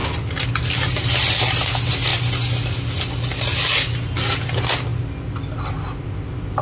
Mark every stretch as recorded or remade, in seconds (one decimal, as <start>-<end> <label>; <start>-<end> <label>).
0.0-6.6 recorded